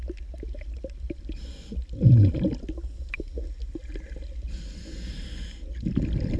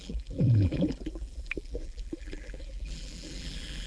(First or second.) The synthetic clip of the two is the second